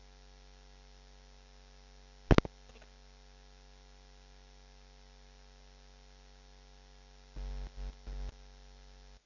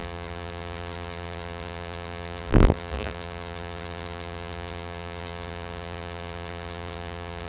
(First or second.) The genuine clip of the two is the first